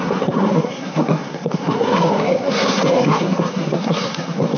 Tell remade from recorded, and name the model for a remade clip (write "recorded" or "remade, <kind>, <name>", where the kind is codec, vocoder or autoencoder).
remade, codec, SNAC